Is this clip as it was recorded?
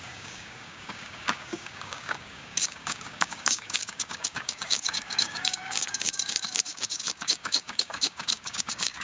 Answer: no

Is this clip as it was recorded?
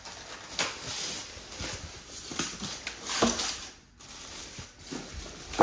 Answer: yes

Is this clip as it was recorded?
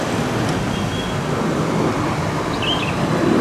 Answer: yes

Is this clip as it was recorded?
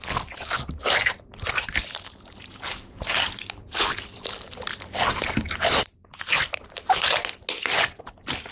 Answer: yes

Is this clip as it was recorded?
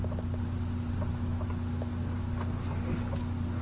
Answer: yes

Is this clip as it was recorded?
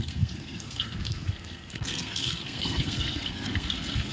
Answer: no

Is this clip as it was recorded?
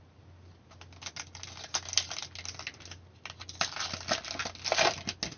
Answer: yes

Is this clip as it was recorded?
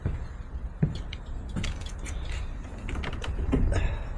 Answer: yes